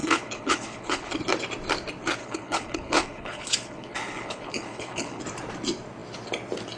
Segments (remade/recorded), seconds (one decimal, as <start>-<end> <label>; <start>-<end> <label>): 0.0-1.2 remade; 1.2-2.2 recorded; 2.2-5.2 remade; 5.2-6.8 recorded